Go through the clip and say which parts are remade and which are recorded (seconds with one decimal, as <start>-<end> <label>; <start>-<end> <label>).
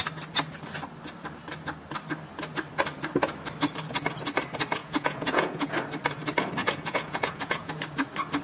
0.0-4.8 recorded; 4.8-5.7 remade; 5.7-6.6 recorded; 6.6-7.7 remade; 7.7-8.4 recorded